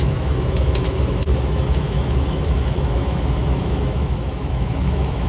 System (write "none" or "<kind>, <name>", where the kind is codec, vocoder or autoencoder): autoencoder, DAC-VAE